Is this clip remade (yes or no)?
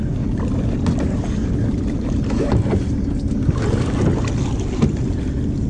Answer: no